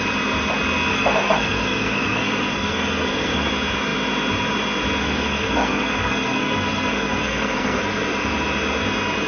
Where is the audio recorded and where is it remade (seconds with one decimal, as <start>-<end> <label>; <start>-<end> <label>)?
0.0-0.9 recorded; 0.9-3.5 remade; 3.5-5.0 recorded; 5.0-7.8 remade; 7.8-9.3 recorded

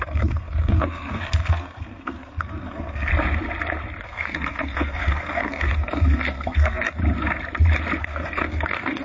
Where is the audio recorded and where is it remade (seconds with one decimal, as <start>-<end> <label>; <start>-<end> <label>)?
0.0-3.1 remade; 3.1-4.0 recorded; 4.0-7.0 remade; 7.0-8.0 recorded; 8.0-9.0 remade

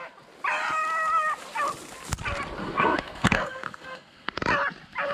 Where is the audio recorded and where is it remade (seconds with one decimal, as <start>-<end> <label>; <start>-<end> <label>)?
0.0-2.6 recorded; 2.6-4.4 remade; 4.4-5.1 recorded

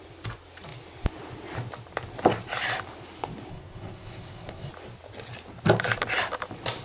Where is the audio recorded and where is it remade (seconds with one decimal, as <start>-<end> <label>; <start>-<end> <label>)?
0.0-3.5 recorded; 3.5-4.7 remade; 4.7-6.8 recorded

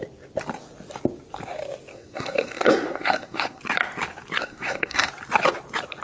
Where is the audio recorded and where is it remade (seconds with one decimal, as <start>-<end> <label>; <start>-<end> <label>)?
0.0-1.9 recorded; 1.9-3.6 remade; 3.6-4.4 recorded; 4.4-5.1 remade; 5.1-6.0 recorded

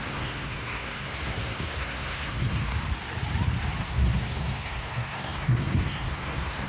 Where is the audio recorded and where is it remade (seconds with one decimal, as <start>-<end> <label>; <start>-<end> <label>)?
0.0-2.7 remade; 2.7-3.8 recorded; 3.8-6.7 remade

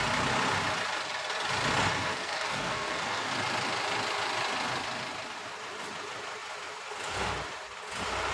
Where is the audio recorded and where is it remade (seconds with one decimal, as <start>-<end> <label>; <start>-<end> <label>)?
0.0-2.0 recorded; 2.0-3.3 remade; 3.3-8.3 recorded

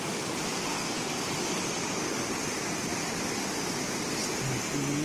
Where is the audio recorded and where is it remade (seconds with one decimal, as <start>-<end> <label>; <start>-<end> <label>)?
0.0-0.7 recorded; 0.7-1.2 remade; 1.2-5.0 recorded